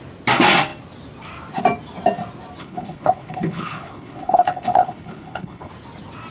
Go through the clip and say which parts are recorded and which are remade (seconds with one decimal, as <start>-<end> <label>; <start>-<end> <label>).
0.0-2.6 recorded; 2.6-5.7 remade; 5.7-6.3 recorded